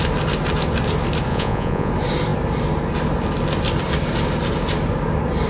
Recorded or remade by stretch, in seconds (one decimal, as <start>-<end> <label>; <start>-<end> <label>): 0.0-1.3 recorded; 1.3-1.9 remade; 1.9-5.5 recorded